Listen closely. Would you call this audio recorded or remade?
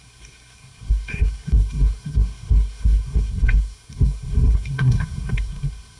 remade